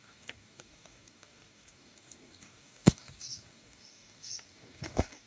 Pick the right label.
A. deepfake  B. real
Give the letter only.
A